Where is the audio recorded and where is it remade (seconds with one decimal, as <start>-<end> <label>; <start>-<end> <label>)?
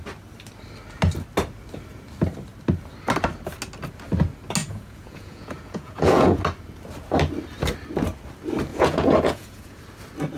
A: 0.0-4.6 recorded; 4.6-6.4 remade; 6.4-8.7 recorded; 8.7-9.8 remade; 9.8-10.4 recorded